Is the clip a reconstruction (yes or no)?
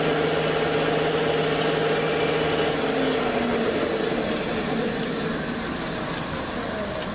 no